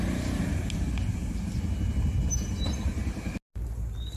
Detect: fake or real real